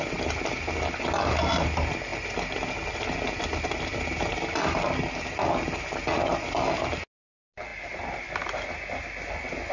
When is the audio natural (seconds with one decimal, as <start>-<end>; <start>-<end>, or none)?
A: 0.0-9.7